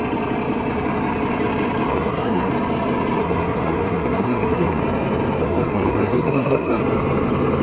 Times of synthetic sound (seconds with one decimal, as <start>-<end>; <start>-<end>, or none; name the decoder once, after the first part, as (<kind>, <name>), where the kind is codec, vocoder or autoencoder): 1.9-2.5 (codec, SNAC); 3.2-4.8; 5.4-6.8